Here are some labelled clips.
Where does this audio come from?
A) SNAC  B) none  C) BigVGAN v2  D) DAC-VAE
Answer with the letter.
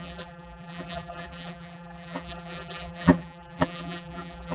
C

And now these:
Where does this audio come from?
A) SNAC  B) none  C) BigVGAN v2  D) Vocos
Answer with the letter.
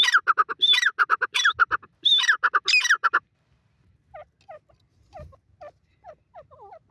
B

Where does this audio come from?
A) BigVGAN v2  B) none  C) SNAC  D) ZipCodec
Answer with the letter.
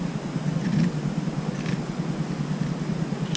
B